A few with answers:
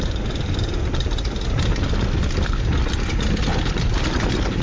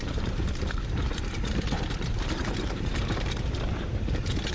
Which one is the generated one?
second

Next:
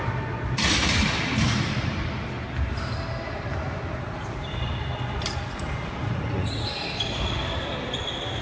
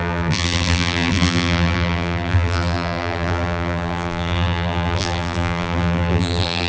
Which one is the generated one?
second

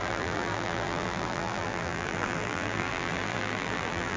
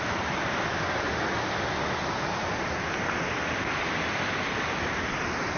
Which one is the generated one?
first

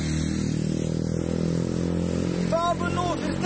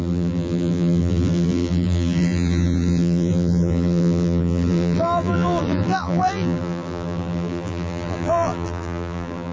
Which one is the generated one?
second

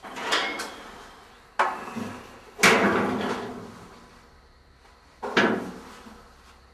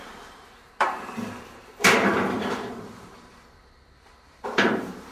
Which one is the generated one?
second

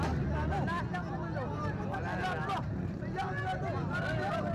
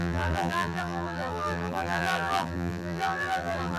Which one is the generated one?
second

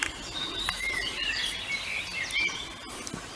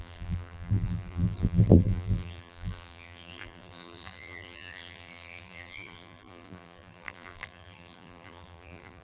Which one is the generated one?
second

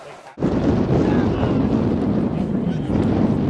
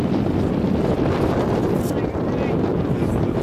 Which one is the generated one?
second